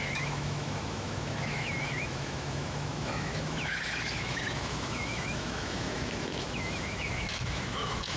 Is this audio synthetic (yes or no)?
yes